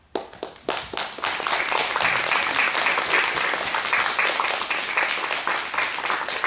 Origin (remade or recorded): recorded